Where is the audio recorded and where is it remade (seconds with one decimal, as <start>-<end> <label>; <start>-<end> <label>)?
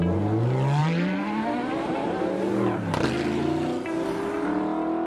0.0-0.8 recorded; 0.8-2.3 remade; 2.3-5.1 recorded